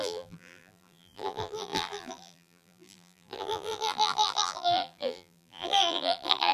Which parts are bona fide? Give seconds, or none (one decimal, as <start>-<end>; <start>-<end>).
none